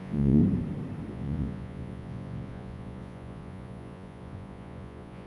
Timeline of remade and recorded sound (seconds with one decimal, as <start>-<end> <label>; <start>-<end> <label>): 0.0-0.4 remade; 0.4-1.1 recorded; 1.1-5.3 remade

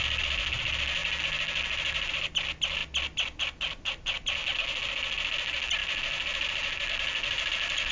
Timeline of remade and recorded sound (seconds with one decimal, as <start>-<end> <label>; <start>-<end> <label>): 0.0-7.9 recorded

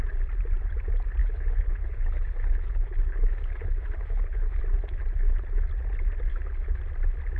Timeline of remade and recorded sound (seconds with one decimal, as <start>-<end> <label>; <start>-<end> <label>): 0.0-1.2 recorded; 1.2-4.6 remade; 4.6-6.3 recorded; 6.3-6.8 remade; 6.8-7.4 recorded

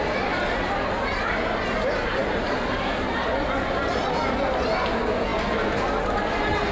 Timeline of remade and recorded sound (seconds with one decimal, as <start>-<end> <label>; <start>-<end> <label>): 0.0-2.2 recorded; 2.2-3.1 remade; 3.1-6.7 recorded